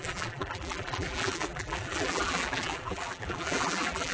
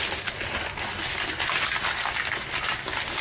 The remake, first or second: first